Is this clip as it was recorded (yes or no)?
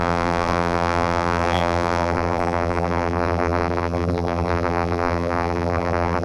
no